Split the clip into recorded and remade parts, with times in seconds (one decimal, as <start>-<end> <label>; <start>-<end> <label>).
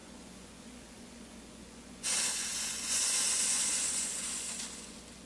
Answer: 0.0-5.3 remade